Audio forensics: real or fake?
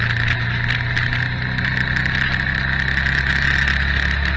real